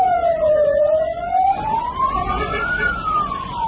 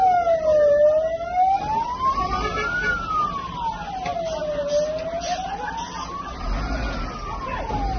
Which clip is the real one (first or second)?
second